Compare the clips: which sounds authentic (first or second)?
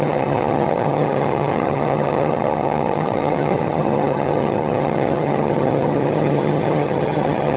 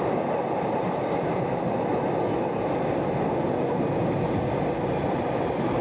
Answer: second